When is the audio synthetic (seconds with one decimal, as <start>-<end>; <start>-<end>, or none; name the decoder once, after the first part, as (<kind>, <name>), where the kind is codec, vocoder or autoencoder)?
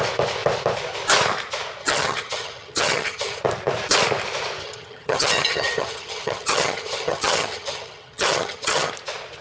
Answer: 1.8-3.4 (vocoder, HiFi-GAN); 4.6-8.9